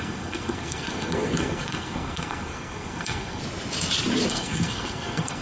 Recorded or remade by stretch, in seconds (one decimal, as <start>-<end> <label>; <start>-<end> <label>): 0.0-3.4 remade; 3.4-4.3 recorded; 4.3-5.4 remade